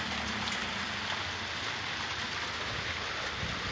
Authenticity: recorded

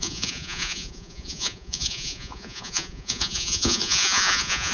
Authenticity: remade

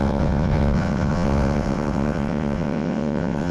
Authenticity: remade